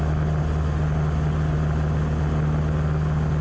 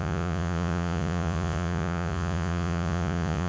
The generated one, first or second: second